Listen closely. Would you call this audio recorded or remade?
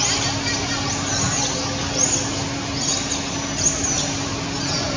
recorded